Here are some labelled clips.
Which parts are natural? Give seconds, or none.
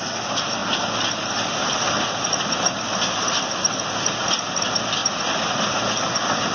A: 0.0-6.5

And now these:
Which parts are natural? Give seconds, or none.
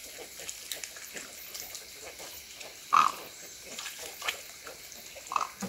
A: 0.0-2.8; 4.7-5.7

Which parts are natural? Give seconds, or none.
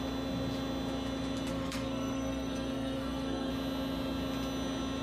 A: 0.0-1.5; 3.5-5.0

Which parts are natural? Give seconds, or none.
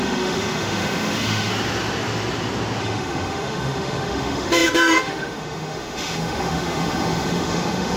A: 1.5-2.8